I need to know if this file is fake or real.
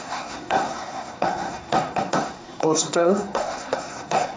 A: fake